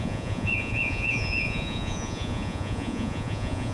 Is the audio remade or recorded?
remade